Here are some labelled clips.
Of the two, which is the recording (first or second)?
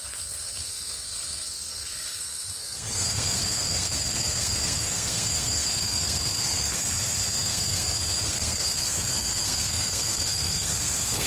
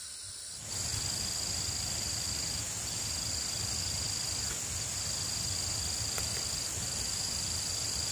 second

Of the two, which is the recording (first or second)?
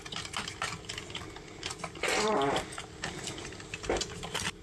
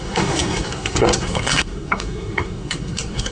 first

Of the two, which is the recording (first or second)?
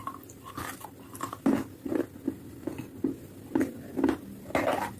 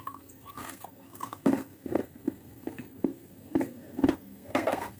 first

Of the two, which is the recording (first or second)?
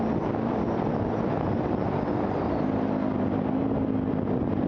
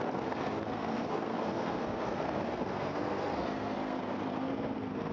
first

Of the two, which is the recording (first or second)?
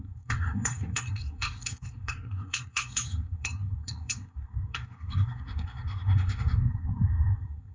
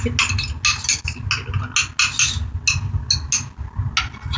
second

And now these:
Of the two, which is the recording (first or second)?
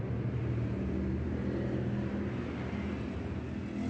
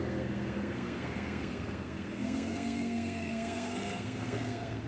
first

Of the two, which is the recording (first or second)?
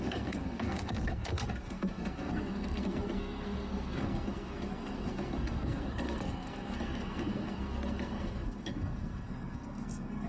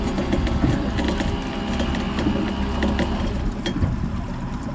second